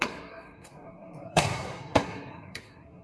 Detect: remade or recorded remade